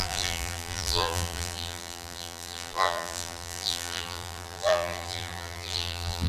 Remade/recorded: remade